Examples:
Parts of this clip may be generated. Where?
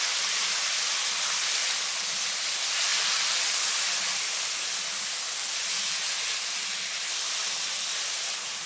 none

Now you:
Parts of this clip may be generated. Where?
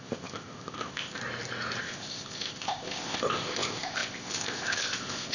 0.0-1.2 (codec, ZipCodec); 1.8-5.3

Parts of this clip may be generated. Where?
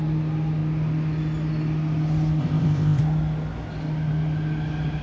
2.4-3.0 (codec, ZipCodec)